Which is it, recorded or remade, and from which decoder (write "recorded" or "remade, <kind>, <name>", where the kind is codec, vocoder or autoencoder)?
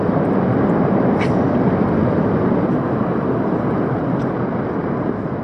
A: remade, vocoder, BigVGAN v2